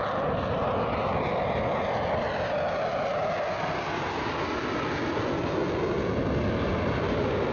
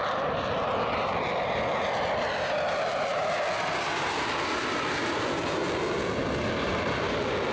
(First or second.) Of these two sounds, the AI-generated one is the second